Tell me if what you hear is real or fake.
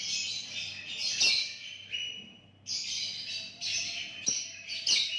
real